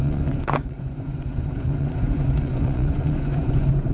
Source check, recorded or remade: remade